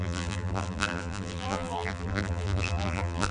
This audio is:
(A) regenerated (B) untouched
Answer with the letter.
A